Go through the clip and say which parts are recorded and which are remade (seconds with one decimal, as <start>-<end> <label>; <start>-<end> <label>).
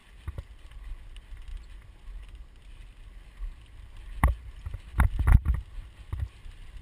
0.0-6.8 recorded